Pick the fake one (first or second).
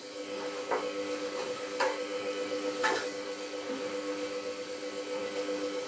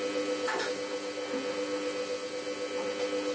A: first